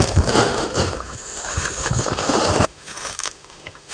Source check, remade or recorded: remade